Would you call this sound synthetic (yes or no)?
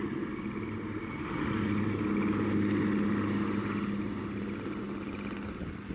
no